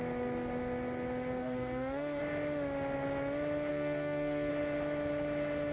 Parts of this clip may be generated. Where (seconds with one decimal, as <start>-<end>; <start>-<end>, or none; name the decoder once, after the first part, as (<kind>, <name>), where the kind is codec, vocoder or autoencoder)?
1.4-2.2 (codec, SNAC); 3.7-4.5